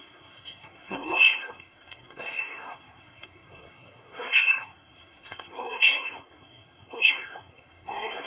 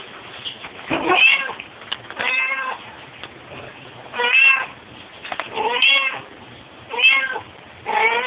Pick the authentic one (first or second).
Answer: second